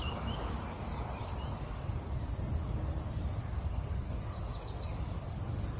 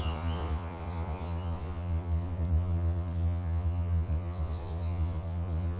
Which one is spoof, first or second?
second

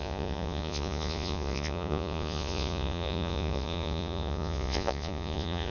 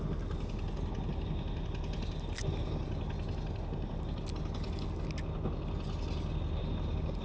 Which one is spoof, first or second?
first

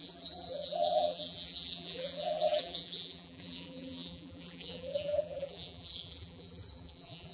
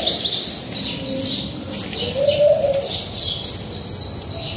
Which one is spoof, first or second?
first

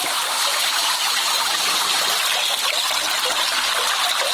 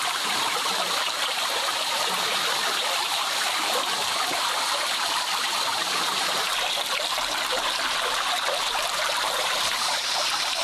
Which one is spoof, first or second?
second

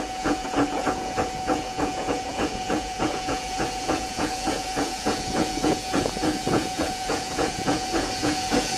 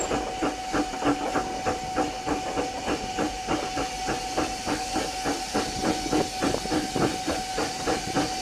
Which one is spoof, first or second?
first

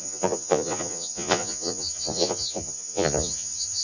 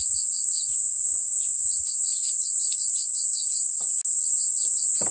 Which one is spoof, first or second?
first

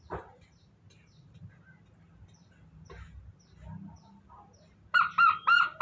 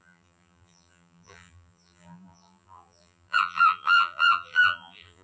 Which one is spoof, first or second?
second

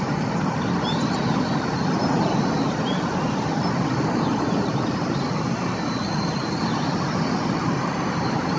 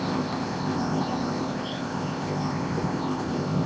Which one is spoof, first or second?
second